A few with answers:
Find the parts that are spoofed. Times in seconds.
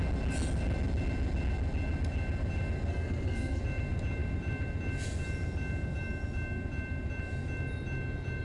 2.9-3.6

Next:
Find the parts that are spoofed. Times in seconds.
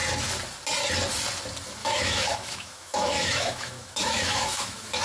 1.8-5.0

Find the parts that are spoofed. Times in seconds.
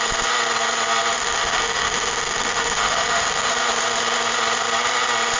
1.2-3.5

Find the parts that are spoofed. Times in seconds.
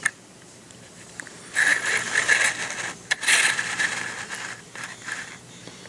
0.0-1.7; 4.6-5.9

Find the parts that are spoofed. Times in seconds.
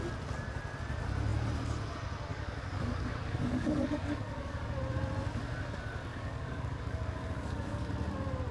2.3-4.8; 6.1-7.9